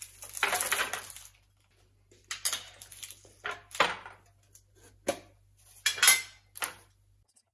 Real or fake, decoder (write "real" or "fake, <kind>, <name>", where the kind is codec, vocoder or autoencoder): real